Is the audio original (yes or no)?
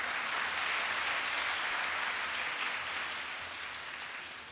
yes